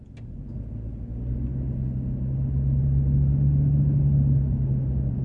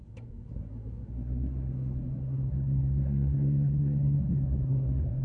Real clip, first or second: first